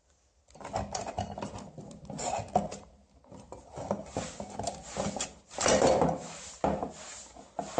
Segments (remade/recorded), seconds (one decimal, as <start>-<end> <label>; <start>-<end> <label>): 0.0-7.8 recorded